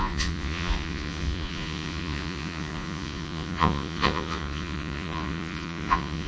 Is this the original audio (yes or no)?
no